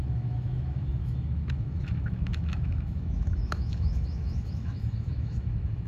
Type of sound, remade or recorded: remade